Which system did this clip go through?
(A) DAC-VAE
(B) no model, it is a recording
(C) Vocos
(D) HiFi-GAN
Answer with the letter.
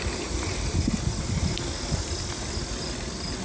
B